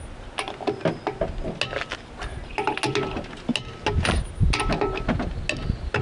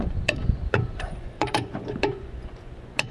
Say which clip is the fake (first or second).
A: second